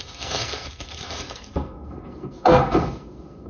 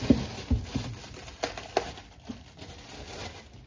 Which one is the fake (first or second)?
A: first